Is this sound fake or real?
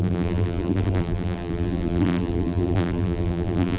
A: fake